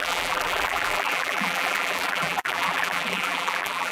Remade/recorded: remade